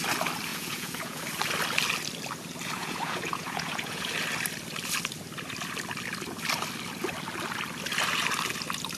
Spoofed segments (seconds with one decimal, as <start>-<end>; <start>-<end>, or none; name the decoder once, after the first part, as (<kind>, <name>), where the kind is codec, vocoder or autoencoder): 0.5-1.2 (vocoder, Vocos); 2.8-4.1